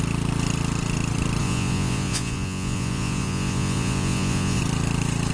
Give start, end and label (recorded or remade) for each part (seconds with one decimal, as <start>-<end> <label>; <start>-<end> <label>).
0.0-1.4 recorded; 1.4-4.6 remade; 4.6-5.3 recorded